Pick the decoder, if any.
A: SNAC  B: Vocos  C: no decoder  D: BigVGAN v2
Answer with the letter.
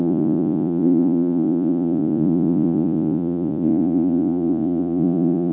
B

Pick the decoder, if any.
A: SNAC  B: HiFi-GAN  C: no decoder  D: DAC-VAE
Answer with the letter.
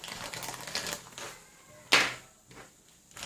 C